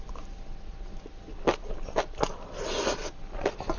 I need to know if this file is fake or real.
real